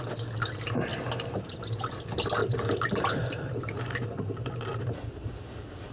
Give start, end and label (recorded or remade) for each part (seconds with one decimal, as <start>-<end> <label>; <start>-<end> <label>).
0.0-0.9 recorded; 0.9-1.8 remade; 1.8-2.4 recorded; 2.4-4.4 remade; 4.4-5.9 recorded